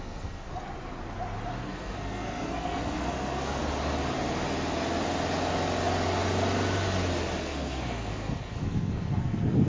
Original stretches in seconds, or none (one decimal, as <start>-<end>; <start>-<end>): 0.5-1.6; 3.6-7.4